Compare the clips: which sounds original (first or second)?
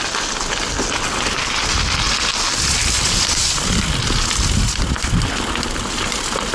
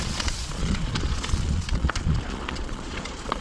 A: first